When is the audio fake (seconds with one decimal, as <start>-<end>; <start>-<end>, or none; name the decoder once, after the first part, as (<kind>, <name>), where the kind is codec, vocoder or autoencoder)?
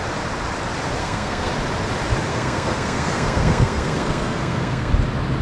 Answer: 1.0-1.5 (codec, SNAC); 2.3-4.9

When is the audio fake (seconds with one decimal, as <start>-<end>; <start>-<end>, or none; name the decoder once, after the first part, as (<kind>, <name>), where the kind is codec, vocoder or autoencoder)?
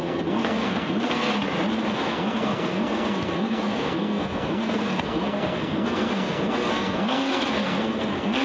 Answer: 0.0-1.3 (codec, SNAC); 1.9-8.4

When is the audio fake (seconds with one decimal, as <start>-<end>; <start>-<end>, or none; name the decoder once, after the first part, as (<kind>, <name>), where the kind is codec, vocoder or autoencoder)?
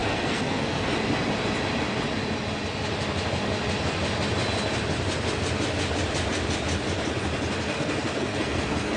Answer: 0.0-0.9 (codec, SNAC); 7.7-9.0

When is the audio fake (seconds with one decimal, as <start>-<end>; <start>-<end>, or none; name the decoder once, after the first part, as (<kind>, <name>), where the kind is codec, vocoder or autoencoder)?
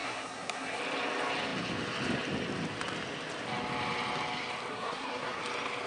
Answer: 0.0-0.8 (codec, SNAC); 4.7-5.4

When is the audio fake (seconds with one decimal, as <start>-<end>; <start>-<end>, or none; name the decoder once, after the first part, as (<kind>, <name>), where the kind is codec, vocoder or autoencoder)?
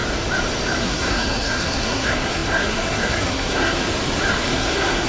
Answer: 0.8-3.8 (codec, SNAC); 4.5-5.1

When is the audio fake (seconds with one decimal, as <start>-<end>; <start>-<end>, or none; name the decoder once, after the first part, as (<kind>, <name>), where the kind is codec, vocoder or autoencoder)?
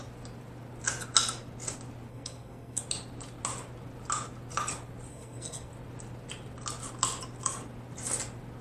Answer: 2.1-2.8 (codec, SNAC); 5.1-5.7